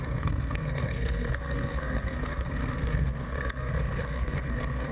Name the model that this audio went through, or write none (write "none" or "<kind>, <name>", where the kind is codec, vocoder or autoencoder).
codec, SNAC